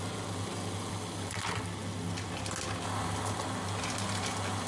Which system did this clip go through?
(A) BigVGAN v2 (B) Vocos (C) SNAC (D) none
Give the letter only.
D